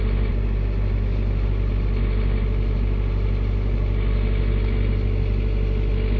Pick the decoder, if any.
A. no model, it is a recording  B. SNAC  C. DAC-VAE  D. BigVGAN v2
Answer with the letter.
A